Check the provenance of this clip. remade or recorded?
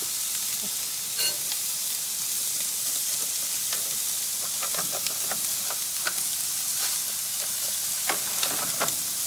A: recorded